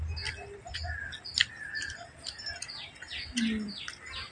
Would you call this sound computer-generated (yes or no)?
no